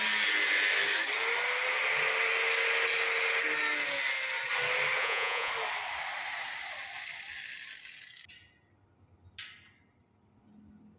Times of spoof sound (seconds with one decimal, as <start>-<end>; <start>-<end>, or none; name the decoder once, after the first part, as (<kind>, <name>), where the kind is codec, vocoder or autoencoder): 5.0-5.5 (vocoder, Vocos)